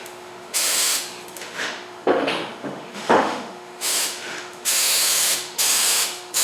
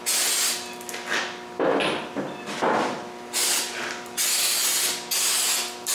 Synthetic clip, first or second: first